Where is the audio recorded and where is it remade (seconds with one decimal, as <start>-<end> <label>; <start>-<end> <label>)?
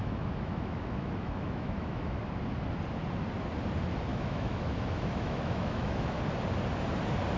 0.0-2.2 remade; 2.2-4.1 recorded; 4.1-6.2 remade; 6.2-7.4 recorded